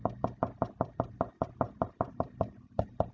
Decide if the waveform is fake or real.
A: fake